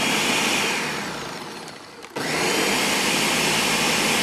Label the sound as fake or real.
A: real